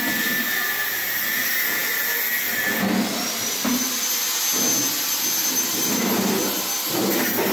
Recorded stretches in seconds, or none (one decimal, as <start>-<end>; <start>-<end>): 0.0-7.5